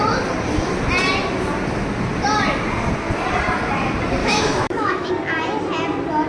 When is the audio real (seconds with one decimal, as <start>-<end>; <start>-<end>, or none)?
0.0-4.2; 5.1-6.3